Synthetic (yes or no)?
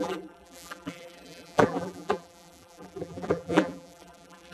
yes